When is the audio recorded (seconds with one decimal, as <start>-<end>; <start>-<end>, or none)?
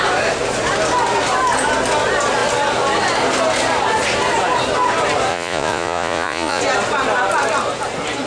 0.0-5.3; 6.6-8.3